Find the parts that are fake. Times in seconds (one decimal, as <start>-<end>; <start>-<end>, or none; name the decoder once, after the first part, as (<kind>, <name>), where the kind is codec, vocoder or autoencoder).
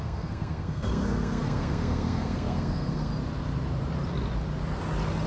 0.0-3.1 (codec, SNAC)